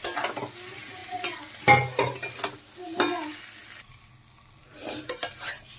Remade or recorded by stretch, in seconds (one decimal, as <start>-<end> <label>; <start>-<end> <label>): 0.0-5.8 recorded